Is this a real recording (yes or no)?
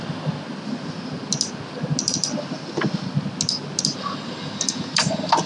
yes